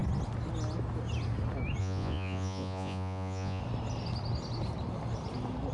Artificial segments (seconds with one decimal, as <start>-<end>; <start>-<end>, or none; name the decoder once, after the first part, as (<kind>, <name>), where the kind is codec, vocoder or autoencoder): 1.8-3.6 (vocoder, Vocos)

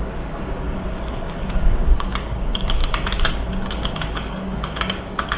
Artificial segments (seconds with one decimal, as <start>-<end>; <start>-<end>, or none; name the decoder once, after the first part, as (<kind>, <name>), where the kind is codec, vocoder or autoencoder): 0.0-2.8 (codec, DAC); 3.3-5.4

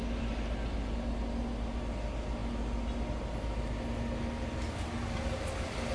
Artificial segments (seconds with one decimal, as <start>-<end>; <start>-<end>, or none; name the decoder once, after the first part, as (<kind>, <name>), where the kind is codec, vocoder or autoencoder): none